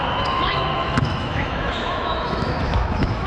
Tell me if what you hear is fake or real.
fake